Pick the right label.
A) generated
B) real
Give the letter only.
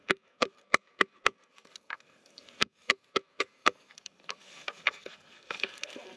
A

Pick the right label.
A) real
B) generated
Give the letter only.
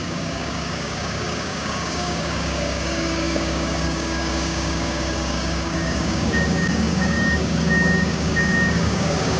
B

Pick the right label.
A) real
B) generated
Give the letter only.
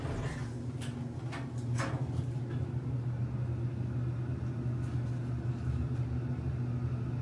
A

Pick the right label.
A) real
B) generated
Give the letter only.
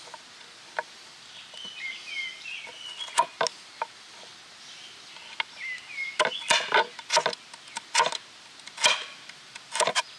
A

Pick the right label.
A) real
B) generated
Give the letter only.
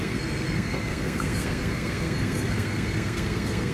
B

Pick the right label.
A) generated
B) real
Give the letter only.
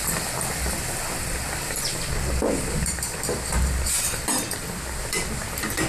A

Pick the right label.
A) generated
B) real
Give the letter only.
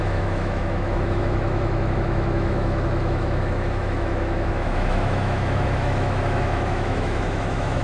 A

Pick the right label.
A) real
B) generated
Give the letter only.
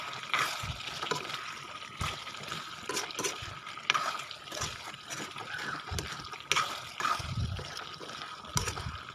A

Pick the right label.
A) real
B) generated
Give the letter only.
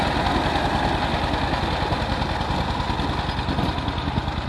A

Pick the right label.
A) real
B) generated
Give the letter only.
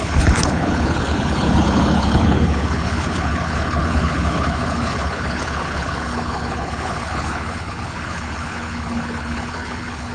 B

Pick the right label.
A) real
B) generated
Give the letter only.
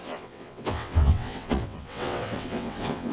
B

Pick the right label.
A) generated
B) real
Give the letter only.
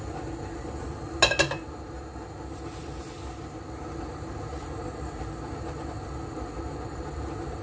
B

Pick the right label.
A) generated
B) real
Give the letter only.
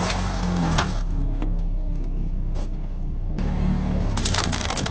A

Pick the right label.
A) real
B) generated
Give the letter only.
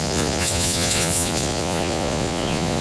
B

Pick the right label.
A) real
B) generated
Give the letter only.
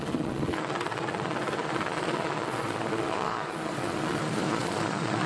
B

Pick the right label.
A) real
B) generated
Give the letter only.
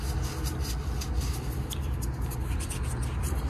A